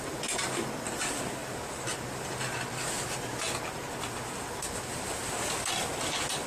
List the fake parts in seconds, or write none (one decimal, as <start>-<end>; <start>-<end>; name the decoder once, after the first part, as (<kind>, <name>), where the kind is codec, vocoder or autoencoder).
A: none